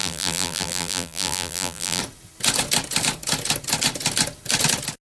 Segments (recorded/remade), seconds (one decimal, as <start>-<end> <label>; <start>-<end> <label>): 0.0-2.0 remade; 2.0-5.1 recorded